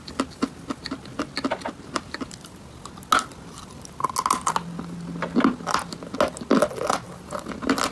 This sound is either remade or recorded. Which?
recorded